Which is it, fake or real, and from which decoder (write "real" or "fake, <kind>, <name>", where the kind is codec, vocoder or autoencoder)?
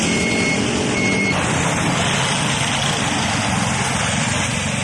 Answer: real